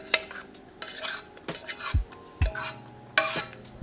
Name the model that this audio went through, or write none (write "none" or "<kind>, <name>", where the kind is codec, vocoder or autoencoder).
none